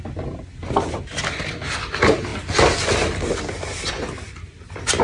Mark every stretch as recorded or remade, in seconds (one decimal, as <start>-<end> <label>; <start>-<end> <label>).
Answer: 0.0-5.0 recorded